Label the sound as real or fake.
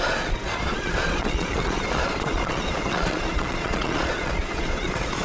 fake